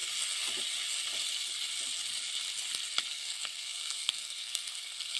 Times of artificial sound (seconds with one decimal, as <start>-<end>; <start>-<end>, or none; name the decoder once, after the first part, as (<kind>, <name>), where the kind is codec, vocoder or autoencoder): 3.1-5.2 (codec, SNAC)